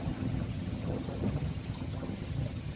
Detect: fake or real fake